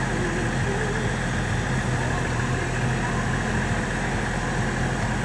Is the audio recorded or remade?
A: recorded